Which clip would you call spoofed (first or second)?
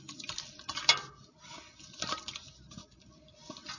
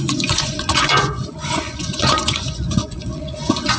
second